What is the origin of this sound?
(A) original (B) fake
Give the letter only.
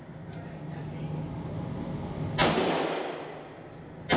A